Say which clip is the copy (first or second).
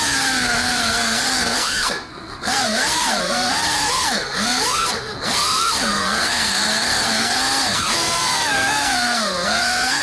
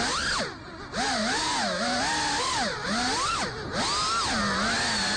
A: first